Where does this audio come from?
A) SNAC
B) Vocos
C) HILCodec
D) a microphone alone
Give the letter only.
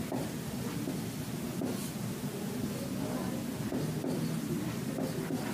D